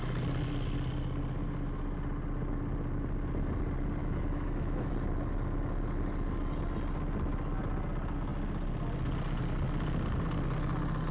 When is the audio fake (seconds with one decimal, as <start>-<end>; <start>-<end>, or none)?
4.0-4.9